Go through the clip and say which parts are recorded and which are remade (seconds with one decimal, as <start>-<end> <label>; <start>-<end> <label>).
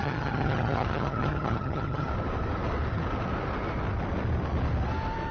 0.0-2.1 remade; 2.1-5.3 recorded